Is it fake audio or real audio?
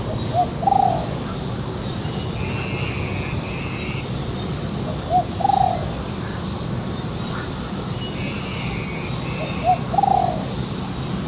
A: real